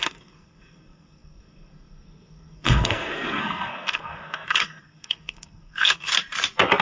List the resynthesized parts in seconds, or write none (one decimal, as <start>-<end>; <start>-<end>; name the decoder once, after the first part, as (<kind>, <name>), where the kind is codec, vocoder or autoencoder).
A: 0.0-6.1 (codec, SNAC)